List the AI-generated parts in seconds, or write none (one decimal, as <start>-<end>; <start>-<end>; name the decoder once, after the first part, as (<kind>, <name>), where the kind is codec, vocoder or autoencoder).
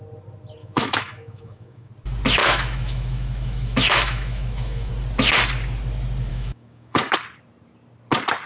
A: 0.6-1.9 (autoencoder, DAC-VAE); 2.4-4.9; 6.3-7.1